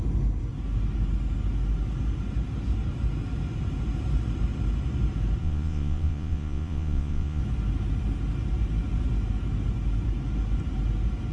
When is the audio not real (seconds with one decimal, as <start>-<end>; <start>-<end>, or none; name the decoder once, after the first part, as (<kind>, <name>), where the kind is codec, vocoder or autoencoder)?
5.4-7.4 (vocoder, Vocos)